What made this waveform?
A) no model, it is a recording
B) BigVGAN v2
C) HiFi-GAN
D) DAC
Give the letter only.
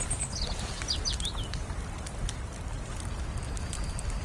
A